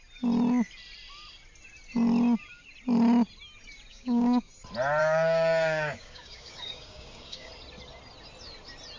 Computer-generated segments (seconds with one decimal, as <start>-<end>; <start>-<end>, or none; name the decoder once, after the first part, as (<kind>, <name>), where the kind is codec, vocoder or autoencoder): 3.9-4.5 (codec, DAC); 5.0-7.5